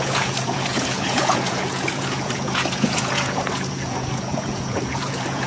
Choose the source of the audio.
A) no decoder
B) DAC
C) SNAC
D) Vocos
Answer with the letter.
D